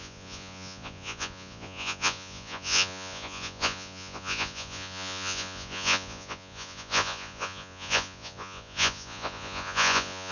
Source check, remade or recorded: remade